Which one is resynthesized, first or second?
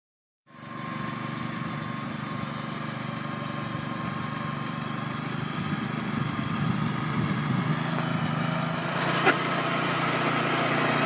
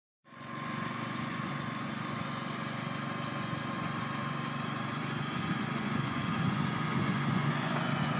second